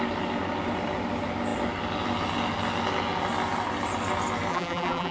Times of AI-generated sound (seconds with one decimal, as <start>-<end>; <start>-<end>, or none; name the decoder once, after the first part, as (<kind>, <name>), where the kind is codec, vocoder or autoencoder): 4.5-5.1 (vocoder, BigVGAN v2)